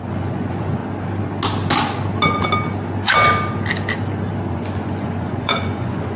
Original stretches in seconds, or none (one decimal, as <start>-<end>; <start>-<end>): 0.8-4.5